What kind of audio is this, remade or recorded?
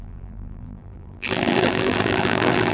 remade